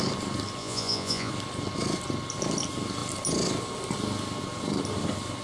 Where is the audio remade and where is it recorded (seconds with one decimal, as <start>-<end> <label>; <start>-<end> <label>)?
0.0-0.6 recorded; 0.6-1.3 remade; 1.3-5.4 recorded